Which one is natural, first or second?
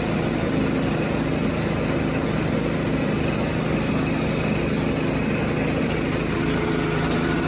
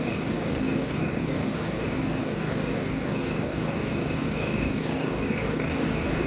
first